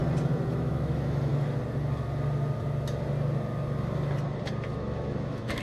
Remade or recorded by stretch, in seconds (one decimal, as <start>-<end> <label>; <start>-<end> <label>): 0.0-0.5 recorded; 0.5-1.3 remade; 1.3-4.7 recorded; 4.7-5.6 remade